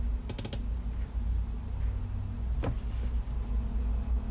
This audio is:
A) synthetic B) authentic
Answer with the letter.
B